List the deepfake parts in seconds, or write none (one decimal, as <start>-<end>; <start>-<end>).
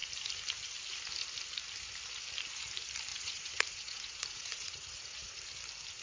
3.1-5.4